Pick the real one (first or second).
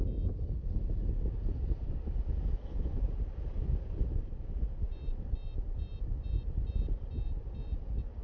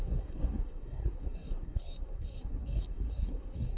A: first